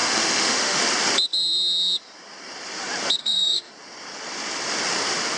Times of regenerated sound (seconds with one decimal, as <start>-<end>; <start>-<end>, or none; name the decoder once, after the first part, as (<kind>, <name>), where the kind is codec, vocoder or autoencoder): 0.0-0.8 (autoencoder, DAC-VAE); 3.2-3.7